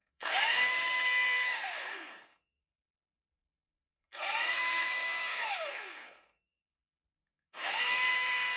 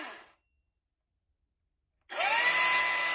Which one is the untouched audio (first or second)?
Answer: second